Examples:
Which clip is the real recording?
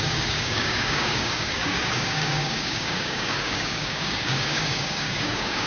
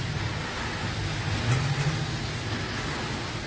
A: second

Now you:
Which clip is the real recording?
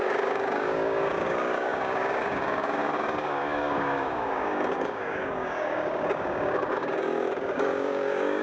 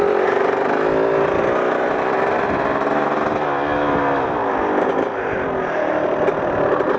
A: second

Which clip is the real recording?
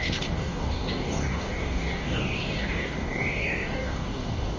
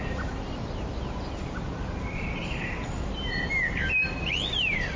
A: second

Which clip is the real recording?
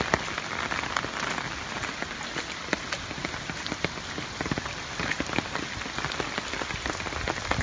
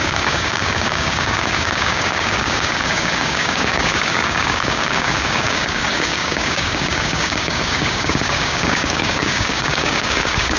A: first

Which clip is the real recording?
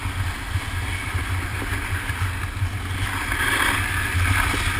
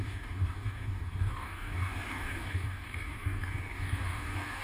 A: first